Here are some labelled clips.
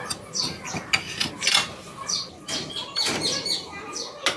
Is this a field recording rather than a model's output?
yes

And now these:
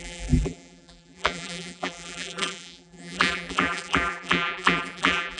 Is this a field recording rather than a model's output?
no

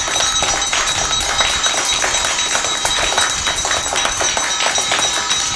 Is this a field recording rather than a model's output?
yes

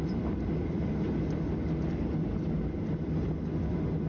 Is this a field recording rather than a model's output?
yes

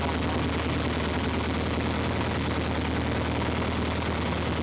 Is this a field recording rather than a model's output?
yes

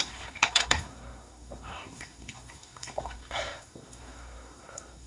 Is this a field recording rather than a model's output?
no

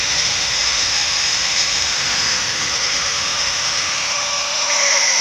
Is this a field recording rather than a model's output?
no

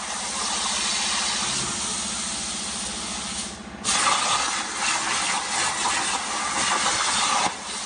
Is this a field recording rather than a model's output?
yes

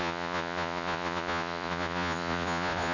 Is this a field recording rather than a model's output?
no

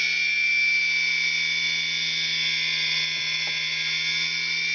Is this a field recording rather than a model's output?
yes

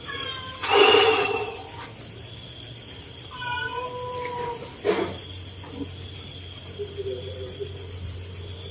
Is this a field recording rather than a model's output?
no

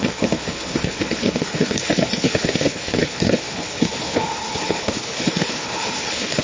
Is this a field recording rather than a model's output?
no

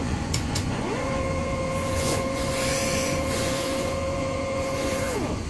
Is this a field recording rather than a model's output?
no